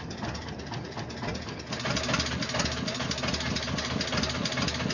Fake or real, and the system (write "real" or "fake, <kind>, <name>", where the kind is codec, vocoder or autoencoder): real